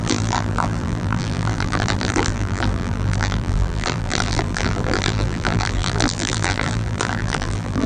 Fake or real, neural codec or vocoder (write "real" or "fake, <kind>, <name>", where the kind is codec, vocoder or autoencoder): fake, vocoder, BigVGAN v2